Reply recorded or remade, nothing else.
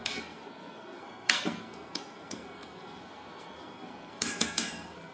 remade